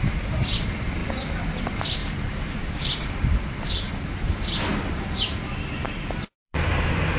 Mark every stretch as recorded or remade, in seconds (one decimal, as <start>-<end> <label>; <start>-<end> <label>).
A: 0.0-1.0 remade; 1.0-1.6 recorded; 1.6-7.2 remade